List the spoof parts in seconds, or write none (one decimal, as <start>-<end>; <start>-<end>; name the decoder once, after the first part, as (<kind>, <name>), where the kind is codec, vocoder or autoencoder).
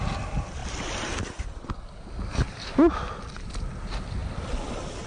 none